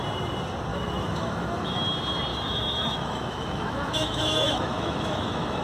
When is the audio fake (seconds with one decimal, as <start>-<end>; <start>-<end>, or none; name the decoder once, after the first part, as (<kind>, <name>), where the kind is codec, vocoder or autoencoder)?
0.7-1.8 (autoencoder, DAC-VAE); 2.3-5.6